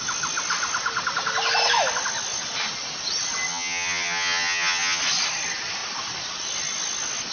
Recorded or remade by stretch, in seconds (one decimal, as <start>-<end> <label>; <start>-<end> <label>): 0.0-3.5 recorded; 3.5-5.0 remade; 5.0-7.3 recorded